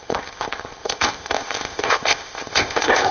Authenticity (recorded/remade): remade